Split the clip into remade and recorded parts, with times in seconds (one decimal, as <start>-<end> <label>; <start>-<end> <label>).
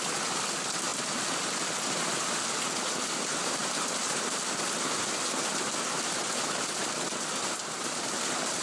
0.0-8.6 recorded